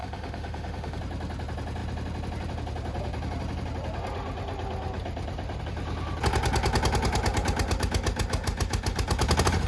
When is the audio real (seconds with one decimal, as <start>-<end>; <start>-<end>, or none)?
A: 1.0-9.7